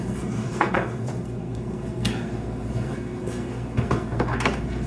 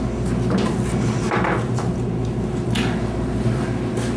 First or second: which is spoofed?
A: first